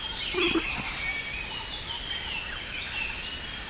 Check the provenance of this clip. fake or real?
real